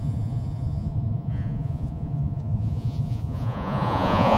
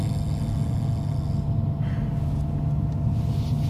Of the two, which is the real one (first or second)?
second